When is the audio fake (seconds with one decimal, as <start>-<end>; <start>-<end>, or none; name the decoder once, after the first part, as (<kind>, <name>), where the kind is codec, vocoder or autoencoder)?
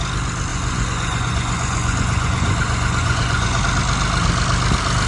0.5-3.6 (vocoder, Vocos)